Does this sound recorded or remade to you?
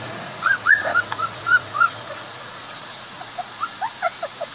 remade